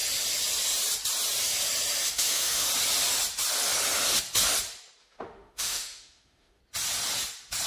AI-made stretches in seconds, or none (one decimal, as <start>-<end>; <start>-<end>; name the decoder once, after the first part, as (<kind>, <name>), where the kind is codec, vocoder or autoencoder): 2.1-2.7 (autoencoder, DAC-VAE); 5.0-6.6